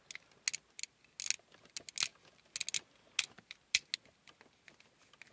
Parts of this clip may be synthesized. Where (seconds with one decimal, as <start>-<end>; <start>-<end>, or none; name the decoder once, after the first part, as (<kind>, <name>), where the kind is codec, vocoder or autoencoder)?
none